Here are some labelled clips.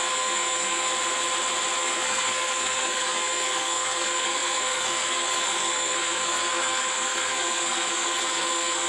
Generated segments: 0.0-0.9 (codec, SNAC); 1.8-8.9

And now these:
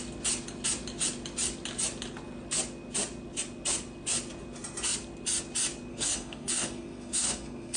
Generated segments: 5.9-7.8 (codec, SNAC)

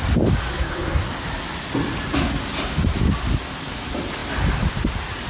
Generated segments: 0.5-1.1 (codec, SNAC)

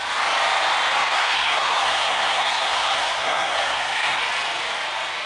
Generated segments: 1.0-4.2 (codec, SNAC)

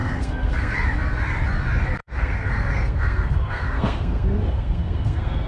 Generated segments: 0.0-0.7 (codec, SNAC); 2.0-5.5

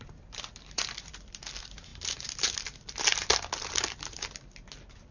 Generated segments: none